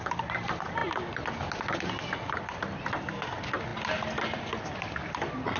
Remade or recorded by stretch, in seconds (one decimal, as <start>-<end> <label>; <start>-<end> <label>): 0.0-5.6 recorded